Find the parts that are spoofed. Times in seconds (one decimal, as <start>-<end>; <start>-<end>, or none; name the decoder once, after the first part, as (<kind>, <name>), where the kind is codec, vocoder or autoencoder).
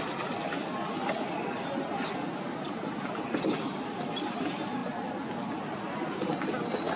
none